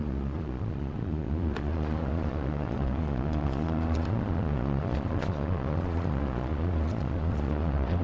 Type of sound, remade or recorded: remade